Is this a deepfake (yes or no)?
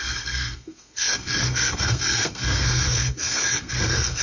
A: yes